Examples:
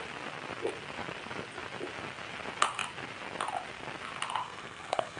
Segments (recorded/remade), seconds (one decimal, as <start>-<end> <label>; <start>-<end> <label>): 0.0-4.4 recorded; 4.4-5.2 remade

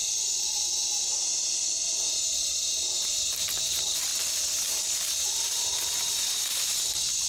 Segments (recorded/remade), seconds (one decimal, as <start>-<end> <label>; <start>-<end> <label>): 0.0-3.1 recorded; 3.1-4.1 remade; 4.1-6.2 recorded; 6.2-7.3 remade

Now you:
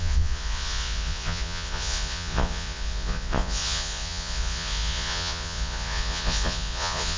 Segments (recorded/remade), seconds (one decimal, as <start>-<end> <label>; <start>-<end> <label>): 0.0-7.2 remade